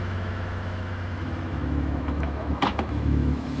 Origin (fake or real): fake